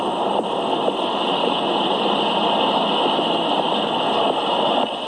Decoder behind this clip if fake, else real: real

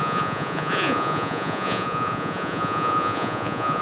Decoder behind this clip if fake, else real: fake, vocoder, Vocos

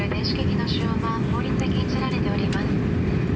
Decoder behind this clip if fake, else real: real